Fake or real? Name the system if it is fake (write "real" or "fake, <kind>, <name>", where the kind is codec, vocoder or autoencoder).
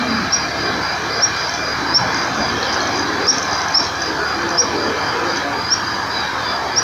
real